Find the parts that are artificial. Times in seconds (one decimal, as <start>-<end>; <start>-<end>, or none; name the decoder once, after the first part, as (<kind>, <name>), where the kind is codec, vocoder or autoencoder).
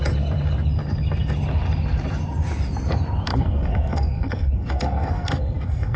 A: 3.3-6.0 (codec, SNAC)